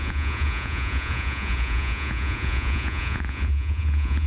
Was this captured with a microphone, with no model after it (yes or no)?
no